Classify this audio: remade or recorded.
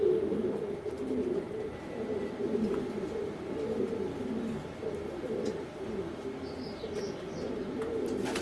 recorded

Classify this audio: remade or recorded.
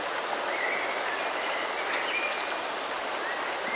recorded